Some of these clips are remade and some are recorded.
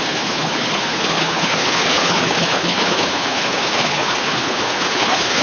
remade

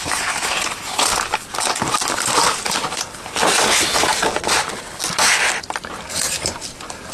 recorded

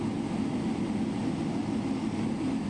recorded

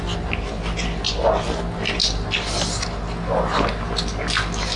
recorded